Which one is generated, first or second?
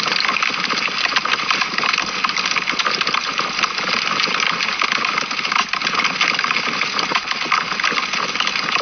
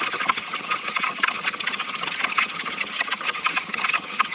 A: second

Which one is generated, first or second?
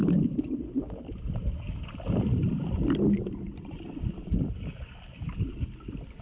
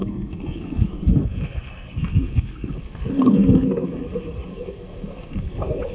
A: second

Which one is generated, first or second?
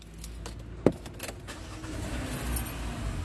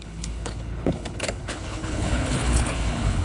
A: second